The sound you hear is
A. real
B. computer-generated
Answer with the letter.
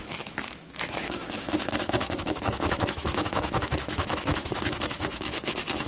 B